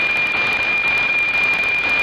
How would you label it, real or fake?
fake